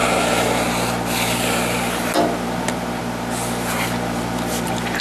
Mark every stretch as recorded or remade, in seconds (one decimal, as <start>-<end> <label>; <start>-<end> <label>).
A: 0.0-5.0 recorded